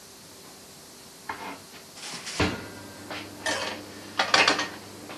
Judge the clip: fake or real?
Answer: real